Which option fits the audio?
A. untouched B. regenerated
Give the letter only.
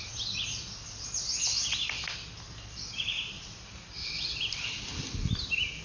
A